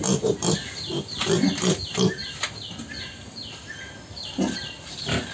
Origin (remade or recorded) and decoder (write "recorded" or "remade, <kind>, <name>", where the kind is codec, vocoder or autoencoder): recorded